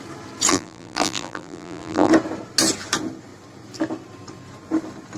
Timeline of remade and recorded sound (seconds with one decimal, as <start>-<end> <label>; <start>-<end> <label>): 0.0-0.5 recorded; 0.5-2.1 remade; 2.1-5.2 recorded